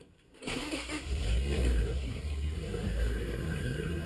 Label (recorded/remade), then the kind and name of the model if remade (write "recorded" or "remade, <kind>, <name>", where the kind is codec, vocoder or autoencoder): remade, codec, SNAC